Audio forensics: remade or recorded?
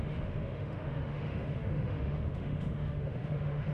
remade